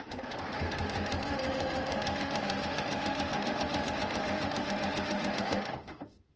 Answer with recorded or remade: remade